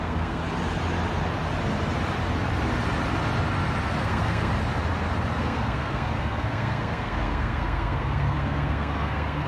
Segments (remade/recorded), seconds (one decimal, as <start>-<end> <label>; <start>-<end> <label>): 0.0-0.4 remade; 0.4-4.0 recorded; 4.0-4.5 remade; 4.5-5.4 recorded; 5.4-9.5 remade